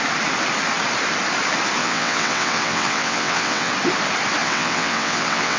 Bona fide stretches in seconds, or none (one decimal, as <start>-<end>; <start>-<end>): 0.0-1.8; 3.7-4.4